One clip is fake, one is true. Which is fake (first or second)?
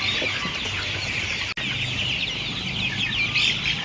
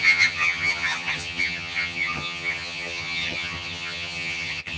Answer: second